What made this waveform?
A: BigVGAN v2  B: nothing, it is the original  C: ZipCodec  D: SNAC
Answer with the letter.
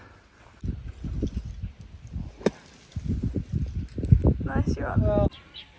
B